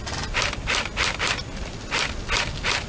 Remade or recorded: recorded